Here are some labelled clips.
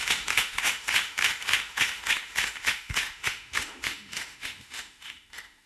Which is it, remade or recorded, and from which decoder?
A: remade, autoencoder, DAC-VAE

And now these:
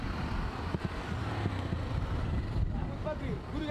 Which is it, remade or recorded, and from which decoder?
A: recorded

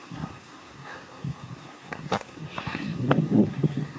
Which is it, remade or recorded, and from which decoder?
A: remade, codec, SNAC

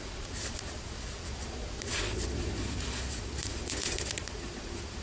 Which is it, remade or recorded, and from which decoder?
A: remade, vocoder, Vocos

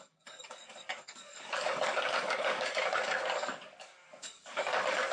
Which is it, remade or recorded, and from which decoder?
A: remade, codec, DAC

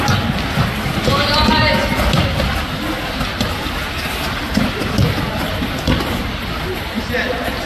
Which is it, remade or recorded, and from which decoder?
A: recorded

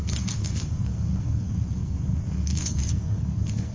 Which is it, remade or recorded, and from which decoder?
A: remade, codec, SNAC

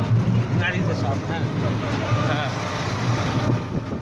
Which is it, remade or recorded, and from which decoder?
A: recorded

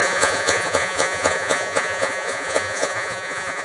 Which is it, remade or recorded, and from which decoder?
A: remade, vocoder, Vocos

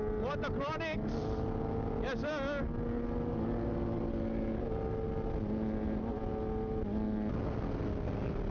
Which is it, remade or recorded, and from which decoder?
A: recorded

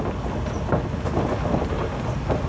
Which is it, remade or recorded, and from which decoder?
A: recorded